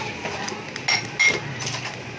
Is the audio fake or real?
real